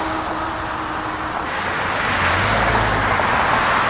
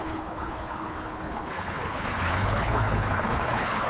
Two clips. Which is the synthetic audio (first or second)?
second